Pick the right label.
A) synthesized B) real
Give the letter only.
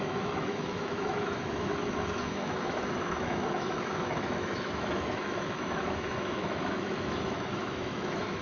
A